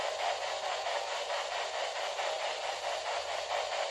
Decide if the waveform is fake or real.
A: real